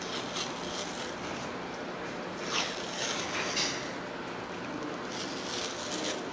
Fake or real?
real